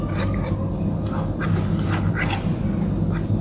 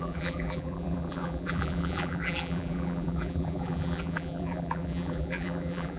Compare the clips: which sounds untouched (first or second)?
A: first